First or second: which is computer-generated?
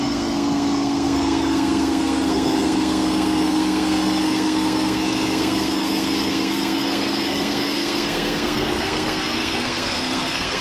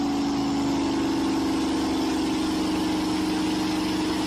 first